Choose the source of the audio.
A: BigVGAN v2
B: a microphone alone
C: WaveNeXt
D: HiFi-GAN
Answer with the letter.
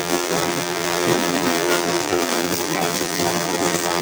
A